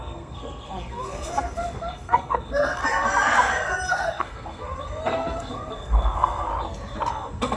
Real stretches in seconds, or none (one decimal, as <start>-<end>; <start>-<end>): 2.8-3.9; 6.5-7.1